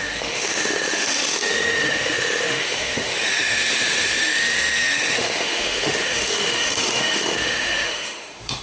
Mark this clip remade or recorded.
remade